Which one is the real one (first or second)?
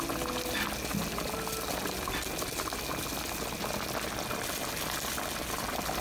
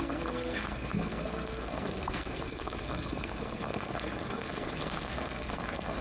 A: first